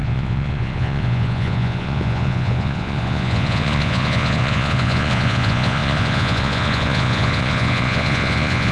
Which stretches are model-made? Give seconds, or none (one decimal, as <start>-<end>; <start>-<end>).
0.0-8.7

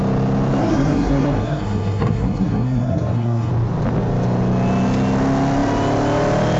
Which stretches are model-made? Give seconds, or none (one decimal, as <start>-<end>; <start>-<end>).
0.6-3.5

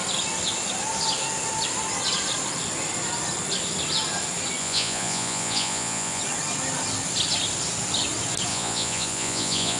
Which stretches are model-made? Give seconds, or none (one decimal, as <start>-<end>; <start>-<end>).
4.6-6.2; 8.5-9.8

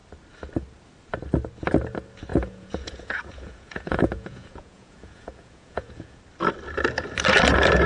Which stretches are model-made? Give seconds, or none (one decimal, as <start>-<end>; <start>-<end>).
2.3-6.2

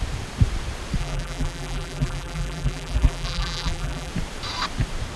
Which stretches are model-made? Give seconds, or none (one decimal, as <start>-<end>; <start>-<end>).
1.0-4.1

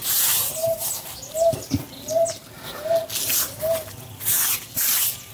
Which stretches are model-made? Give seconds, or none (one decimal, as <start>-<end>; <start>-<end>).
0.6-1.3

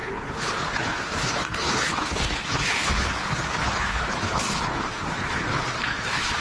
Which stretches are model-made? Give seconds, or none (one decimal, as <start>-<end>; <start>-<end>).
0.0-6.4